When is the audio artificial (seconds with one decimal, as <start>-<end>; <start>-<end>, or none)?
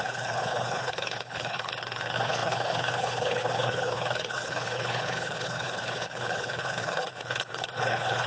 0.0-8.3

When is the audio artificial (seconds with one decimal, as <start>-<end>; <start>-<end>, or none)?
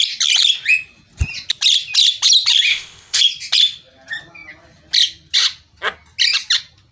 2.7-3.2